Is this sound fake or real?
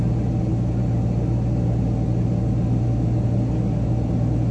real